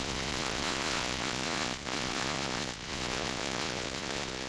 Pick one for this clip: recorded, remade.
remade